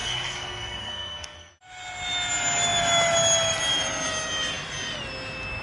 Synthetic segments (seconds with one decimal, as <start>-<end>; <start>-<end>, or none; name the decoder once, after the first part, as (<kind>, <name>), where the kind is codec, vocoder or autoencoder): 0.0-1.5 (codec, SNAC)